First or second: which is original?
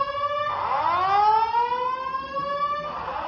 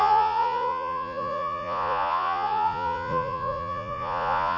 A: first